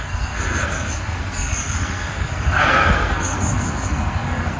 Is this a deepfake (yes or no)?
yes